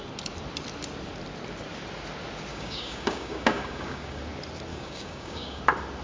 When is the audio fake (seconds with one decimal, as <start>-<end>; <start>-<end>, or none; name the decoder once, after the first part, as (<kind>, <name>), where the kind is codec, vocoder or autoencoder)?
2.5-4.2 (codec, DAC); 4.7-5.6